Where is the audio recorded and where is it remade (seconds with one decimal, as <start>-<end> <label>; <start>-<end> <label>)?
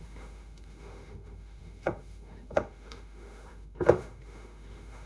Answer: 0.0-5.1 remade